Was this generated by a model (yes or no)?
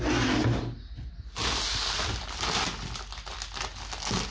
no